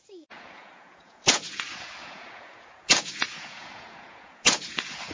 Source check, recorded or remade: remade